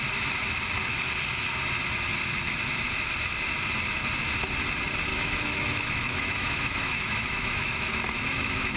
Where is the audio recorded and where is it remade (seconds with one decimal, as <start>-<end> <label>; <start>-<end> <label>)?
0.0-5.1 recorded; 5.1-8.8 remade